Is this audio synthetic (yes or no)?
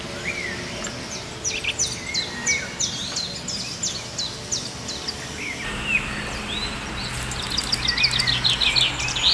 no